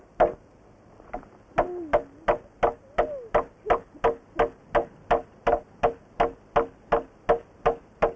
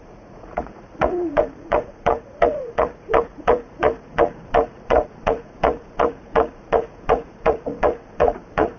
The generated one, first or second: second